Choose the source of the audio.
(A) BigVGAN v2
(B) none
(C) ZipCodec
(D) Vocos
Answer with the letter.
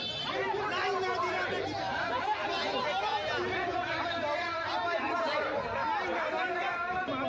B